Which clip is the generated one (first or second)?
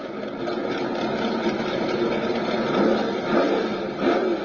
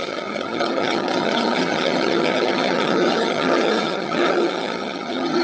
second